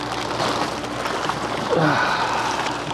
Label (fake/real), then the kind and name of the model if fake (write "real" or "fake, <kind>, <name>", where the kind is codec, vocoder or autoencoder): real